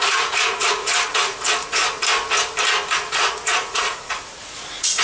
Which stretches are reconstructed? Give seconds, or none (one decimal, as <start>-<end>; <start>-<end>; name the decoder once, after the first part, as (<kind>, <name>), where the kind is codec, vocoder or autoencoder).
0.0-1.8 (vocoder, Vocos); 2.9-5.0

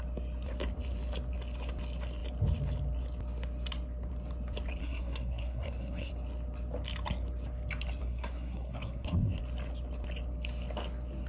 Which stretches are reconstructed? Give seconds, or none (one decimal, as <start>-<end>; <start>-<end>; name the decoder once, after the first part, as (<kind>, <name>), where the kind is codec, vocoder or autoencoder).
4.8-6.1 (codec, SNAC); 8.0-9.4